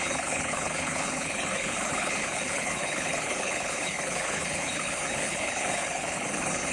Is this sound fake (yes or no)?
yes